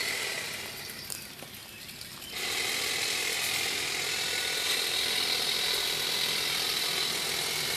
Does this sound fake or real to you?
real